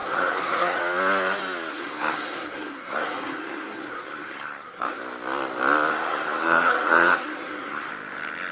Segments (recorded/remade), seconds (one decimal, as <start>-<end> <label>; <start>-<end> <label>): 0.0-0.8 remade; 0.8-1.7 recorded; 1.7-5.0 remade; 5.0-5.9 recorded; 5.9-7.9 remade; 7.9-8.5 recorded